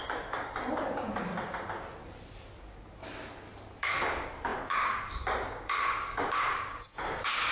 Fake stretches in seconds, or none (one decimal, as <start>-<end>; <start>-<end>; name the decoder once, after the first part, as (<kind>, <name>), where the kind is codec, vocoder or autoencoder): 0.0-1.3 (codec, DAC); 2.6-3.0; 3.8-7.5